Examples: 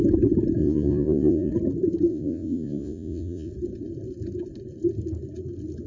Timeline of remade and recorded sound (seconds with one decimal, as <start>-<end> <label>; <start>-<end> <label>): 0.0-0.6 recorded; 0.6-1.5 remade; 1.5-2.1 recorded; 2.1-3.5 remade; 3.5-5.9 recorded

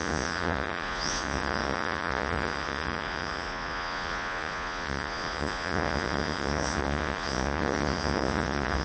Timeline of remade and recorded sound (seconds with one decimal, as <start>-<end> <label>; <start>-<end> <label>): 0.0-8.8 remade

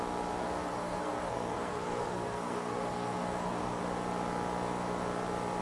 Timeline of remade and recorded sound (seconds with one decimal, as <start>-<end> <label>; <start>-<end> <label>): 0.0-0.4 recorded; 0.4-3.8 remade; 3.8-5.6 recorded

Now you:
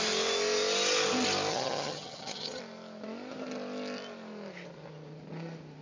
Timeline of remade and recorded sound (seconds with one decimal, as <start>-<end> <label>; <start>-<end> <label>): 0.0-1.5 recorded; 1.5-2.6 remade; 2.6-5.8 recorded

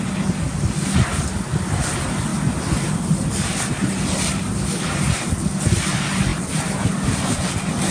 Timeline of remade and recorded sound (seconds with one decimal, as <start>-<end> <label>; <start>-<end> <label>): 0.0-7.9 recorded

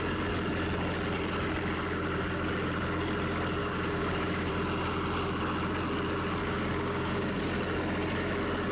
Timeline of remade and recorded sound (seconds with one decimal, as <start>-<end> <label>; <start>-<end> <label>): 0.0-3.6 recorded; 3.6-4.5 remade; 4.5-6.4 recorded; 6.4-7.4 remade; 7.4-8.7 recorded